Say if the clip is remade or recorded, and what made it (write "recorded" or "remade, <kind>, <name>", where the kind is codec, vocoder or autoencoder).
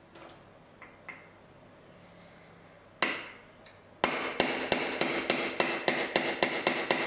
recorded